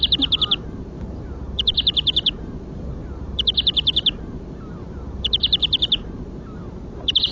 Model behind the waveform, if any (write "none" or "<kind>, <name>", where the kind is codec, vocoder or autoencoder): vocoder, BigVGAN v2